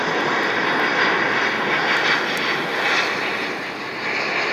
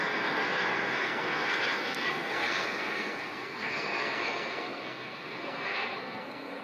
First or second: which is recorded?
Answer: first